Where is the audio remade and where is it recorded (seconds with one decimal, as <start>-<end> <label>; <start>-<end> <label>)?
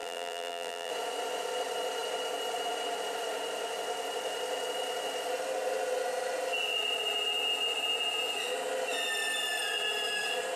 0.0-0.9 remade; 0.9-10.6 recorded